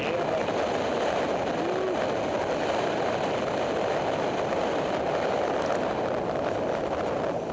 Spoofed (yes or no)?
no